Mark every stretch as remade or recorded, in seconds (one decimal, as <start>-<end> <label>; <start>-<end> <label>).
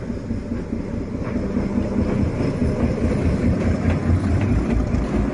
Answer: 0.0-5.3 recorded